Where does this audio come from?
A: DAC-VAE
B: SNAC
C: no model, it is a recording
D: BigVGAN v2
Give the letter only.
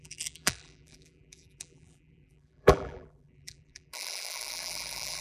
D